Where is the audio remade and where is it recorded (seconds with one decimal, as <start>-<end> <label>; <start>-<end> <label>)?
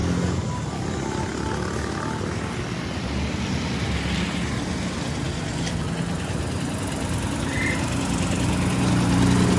0.0-9.6 recorded